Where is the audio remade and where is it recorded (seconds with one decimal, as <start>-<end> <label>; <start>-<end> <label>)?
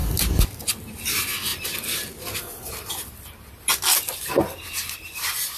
0.0-5.6 recorded